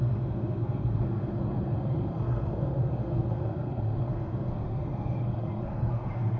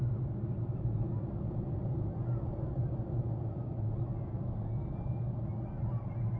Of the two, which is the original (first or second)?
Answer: second